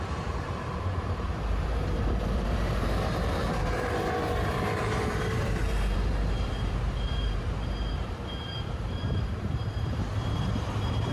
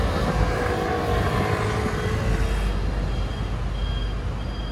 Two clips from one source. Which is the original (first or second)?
second